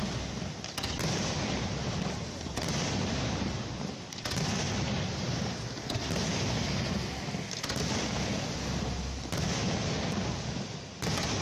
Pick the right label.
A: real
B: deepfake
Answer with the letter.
A